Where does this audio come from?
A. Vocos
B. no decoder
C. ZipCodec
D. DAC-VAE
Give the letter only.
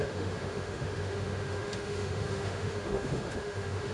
D